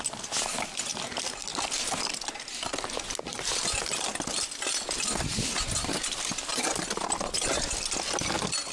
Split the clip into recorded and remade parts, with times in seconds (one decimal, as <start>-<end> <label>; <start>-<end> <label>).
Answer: 0.0-8.7 recorded